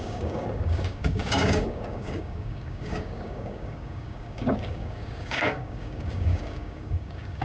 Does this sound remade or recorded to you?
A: remade